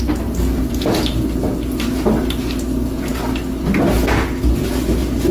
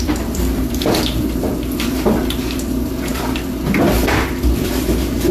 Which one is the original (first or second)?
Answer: first